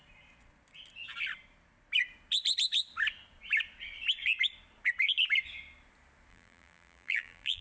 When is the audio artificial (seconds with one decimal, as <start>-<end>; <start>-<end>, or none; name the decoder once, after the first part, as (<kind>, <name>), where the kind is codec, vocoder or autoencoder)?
6.3-7.6 (vocoder, BigVGAN v2)